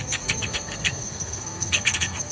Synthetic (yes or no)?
yes